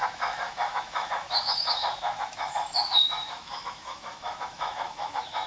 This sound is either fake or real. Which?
fake